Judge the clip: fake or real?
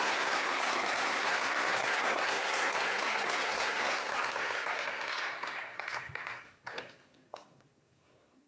fake